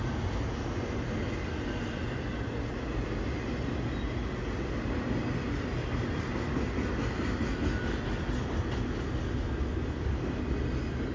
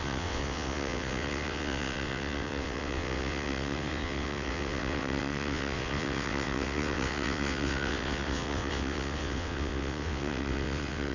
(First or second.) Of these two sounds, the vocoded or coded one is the second